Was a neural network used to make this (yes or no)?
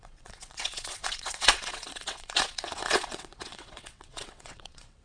yes